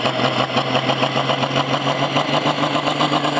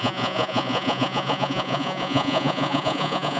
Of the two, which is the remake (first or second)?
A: second